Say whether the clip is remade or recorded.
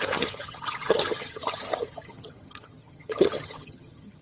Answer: remade